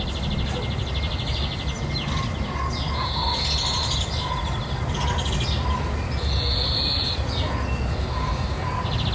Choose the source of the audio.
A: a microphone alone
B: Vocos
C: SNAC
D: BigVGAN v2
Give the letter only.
A